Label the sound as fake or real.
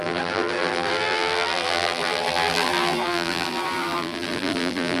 fake